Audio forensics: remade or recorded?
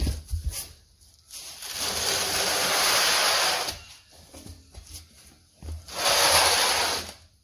recorded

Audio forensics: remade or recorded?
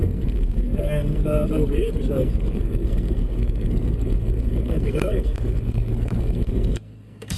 remade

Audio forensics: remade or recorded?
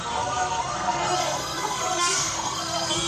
remade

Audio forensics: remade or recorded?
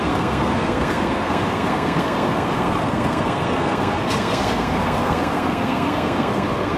remade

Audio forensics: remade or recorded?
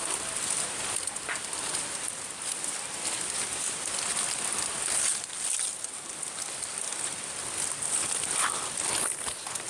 recorded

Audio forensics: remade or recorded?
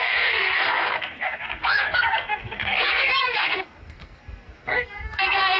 remade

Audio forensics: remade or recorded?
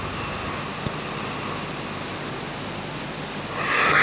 recorded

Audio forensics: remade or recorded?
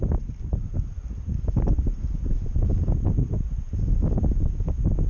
recorded